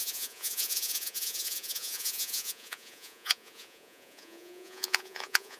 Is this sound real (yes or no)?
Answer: no